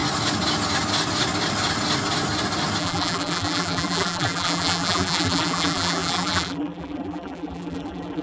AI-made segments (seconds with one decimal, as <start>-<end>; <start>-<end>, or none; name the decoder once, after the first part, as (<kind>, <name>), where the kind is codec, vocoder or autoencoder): 2.8-8.2 (vocoder, BigVGAN v2)